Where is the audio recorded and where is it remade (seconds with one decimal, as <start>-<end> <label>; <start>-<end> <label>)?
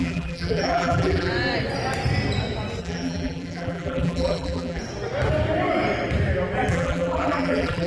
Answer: 0.0-1.3 remade; 1.3-2.8 recorded; 2.8-4.8 remade; 4.8-6.7 recorded; 6.7-7.9 remade